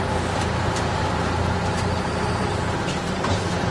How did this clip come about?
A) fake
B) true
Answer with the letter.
A